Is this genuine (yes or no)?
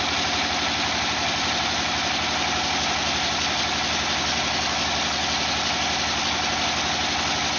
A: yes